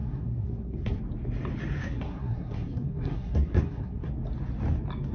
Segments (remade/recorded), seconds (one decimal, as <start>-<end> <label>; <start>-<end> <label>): 0.0-1.0 remade; 1.0-1.8 recorded; 1.8-4.1 remade; 4.1-5.1 recorded

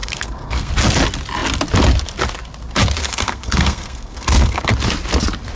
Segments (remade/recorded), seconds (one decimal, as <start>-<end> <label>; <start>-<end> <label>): 0.0-0.7 remade; 0.7-3.0 recorded; 3.0-4.7 remade; 4.7-5.6 recorded

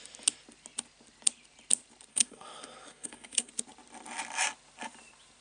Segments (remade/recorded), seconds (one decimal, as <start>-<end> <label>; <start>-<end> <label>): 0.0-2.1 recorded; 2.1-3.5 remade; 3.5-5.4 recorded

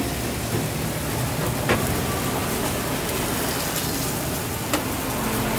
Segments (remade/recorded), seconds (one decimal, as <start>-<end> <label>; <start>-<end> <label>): 0.0-5.6 recorded

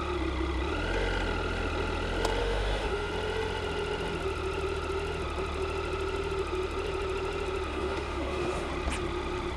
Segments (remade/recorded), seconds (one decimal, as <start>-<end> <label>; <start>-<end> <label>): 0.0-2.4 recorded; 2.4-3.1 remade; 3.1-7.7 recorded; 7.7-8.7 remade; 8.7-9.6 recorded

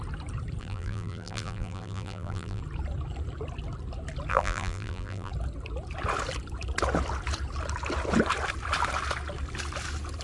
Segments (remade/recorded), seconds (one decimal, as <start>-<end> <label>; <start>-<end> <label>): 0.0-0.6 recorded; 0.6-2.6 remade; 2.6-4.3 recorded; 4.3-5.3 remade; 5.3-10.2 recorded

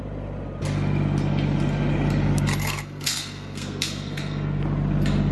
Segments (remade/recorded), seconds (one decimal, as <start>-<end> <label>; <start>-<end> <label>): 0.0-2.6 recorded; 2.6-4.6 remade; 4.6-5.3 recorded

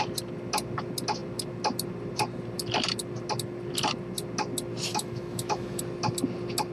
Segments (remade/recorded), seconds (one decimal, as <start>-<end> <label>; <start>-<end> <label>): 0.0-4.9 recorded; 4.9-5.8 remade; 5.8-6.7 recorded